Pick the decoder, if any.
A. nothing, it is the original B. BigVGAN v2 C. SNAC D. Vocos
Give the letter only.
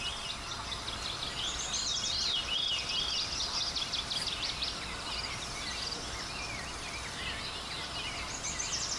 A